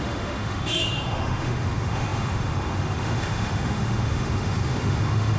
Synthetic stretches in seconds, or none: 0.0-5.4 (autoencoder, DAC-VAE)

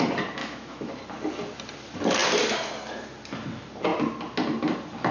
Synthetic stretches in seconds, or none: 0.4-0.9 (autoencoder, DAC-VAE)

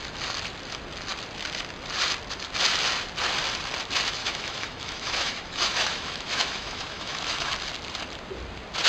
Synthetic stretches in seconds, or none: 4.2-7.5 (autoencoder, DAC-VAE)

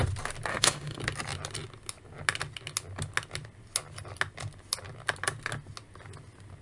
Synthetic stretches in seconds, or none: 0.5-1.0 (autoencoder, DAC-VAE)

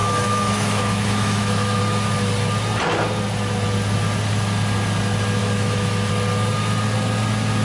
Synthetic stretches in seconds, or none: 0.0-1.8 (autoencoder, DAC-VAE); 5.4-6.1